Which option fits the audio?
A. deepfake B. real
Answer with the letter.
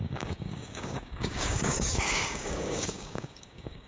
A